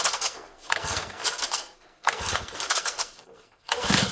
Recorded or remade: remade